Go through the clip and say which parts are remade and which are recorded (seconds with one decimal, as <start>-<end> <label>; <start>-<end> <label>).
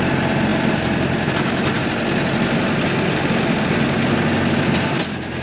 0.0-5.4 recorded